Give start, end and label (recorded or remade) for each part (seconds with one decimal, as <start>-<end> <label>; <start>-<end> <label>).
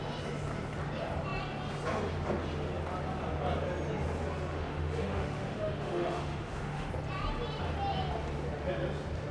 0.0-4.5 recorded; 4.5-6.9 remade; 6.9-9.3 recorded